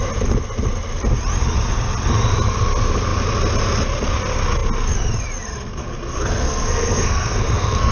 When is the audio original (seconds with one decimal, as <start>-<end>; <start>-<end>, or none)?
0.0-5.8